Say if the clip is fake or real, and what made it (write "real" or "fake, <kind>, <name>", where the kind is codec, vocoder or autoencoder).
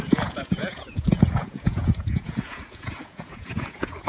fake, vocoder, Vocos